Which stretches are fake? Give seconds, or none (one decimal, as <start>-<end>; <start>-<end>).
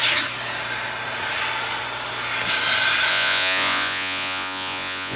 3.1-5.2